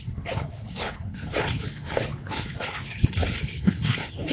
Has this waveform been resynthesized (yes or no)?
yes